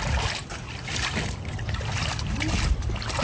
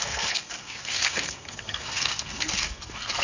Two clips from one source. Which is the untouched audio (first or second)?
first